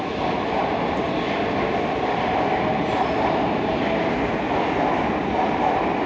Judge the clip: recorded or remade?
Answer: recorded